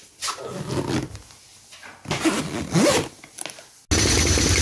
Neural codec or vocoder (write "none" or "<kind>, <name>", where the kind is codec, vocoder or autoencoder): none